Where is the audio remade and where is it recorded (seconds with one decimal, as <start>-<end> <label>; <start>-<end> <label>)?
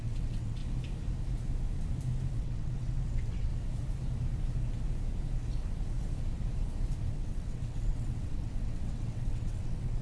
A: 0.0-0.6 remade; 0.6-2.3 recorded; 2.3-3.5 remade; 3.5-7.1 recorded; 7.1-10.0 remade